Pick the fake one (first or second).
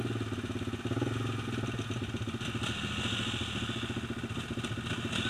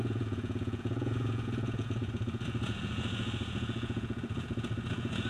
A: second